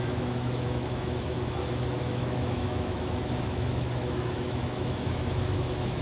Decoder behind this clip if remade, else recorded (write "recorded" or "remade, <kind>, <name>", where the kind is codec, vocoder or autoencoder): remade, autoencoder, DAC-VAE